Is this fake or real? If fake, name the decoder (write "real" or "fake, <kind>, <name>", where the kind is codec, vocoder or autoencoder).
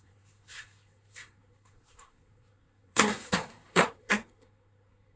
fake, codec, SNAC